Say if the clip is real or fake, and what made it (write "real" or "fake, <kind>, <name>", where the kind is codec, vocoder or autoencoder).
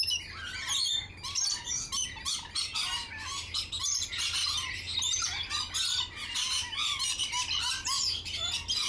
real